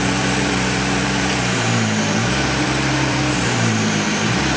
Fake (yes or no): yes